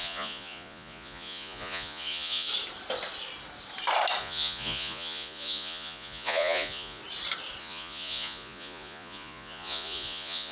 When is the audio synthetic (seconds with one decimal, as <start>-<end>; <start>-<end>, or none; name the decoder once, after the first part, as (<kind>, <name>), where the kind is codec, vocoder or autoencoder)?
0.0-2.5 (vocoder, Vocos); 4.2-7.0; 7.6-10.5